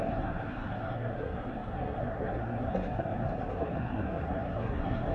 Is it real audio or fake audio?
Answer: fake